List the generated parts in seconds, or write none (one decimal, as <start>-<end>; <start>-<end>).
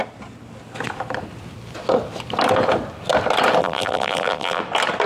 3.6-4.6